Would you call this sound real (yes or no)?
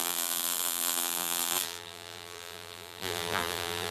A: no